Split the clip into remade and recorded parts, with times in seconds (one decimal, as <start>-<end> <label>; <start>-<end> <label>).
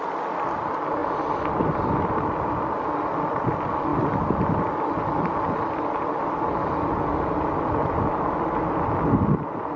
0.0-9.8 recorded